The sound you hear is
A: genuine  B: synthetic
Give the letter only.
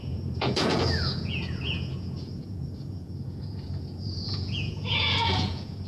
B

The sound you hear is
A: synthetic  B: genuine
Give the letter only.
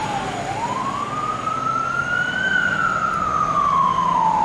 B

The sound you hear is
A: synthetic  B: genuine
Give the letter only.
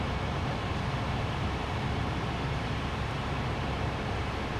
A